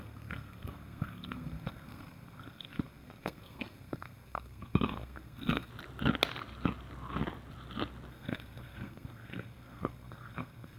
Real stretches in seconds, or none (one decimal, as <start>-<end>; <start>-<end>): 5.7-8.1

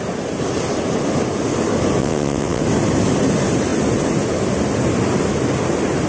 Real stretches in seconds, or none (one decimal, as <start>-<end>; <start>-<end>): 0.0-2.0; 2.6-6.1

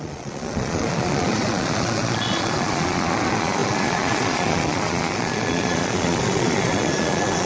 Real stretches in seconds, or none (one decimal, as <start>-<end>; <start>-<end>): none

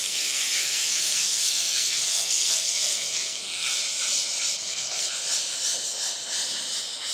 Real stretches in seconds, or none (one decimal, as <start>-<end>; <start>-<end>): 3.8-4.6; 5.1-7.1